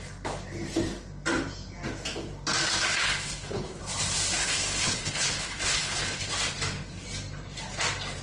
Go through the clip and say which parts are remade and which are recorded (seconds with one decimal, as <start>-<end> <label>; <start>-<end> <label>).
0.0-3.0 recorded; 3.0-3.8 remade; 3.8-4.4 recorded; 4.4-6.3 remade; 6.3-8.2 recorded